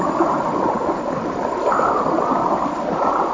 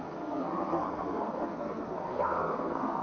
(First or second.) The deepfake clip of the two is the second